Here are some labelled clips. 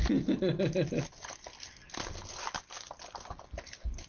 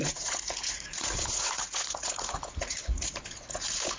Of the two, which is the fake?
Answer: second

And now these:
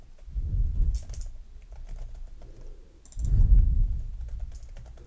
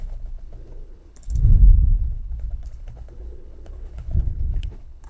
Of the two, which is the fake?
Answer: second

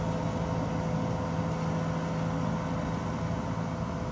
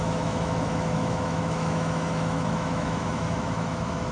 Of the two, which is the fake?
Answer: second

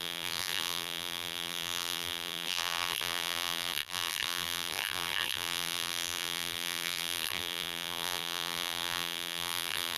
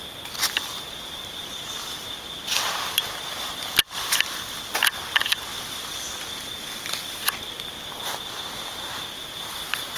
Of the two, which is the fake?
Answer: first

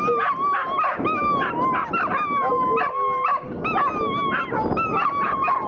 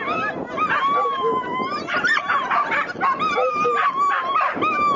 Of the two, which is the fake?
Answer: second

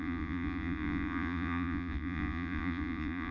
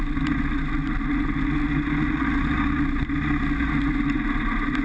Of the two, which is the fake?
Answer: first